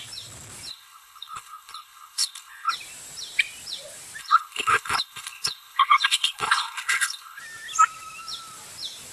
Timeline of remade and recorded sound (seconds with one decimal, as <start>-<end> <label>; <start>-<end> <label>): 0.0-0.7 recorded; 0.7-2.7 remade; 2.7-4.2 recorded; 4.2-7.4 remade; 7.4-9.1 recorded